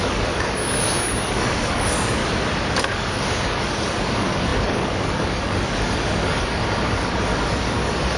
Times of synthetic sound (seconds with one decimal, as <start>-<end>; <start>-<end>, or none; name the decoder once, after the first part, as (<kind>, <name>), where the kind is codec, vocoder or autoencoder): 0.0-2.2 (codec, DAC); 2.8-8.2